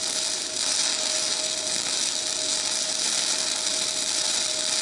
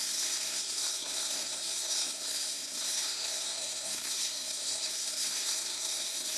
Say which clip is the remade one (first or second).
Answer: second